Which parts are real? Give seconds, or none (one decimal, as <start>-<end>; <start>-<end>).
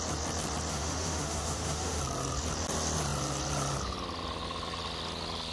0.0-0.7; 2.0-5.5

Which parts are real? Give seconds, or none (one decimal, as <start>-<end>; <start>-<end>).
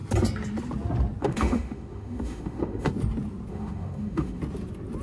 0.0-1.2; 2.9-3.5; 4.4-5.0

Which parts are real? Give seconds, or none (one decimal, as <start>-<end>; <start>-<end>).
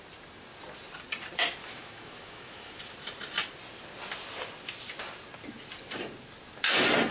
0.0-1.6; 2.8-7.1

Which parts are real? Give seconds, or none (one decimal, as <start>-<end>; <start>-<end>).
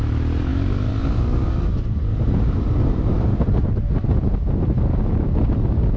0.0-6.0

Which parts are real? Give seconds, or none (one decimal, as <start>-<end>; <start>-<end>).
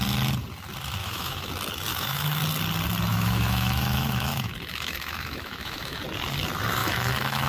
0.0-1.0; 1.5-1.9; 2.4-3.1; 6.0-6.8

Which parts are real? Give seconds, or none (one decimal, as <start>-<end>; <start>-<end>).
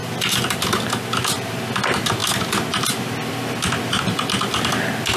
0.0-5.2